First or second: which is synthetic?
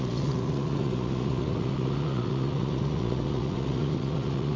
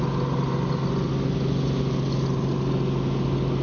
first